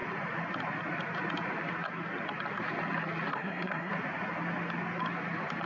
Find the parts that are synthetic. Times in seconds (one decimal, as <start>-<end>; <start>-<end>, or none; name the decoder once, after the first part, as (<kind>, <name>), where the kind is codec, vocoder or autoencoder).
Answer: 3.3-3.9 (codec, SNAC)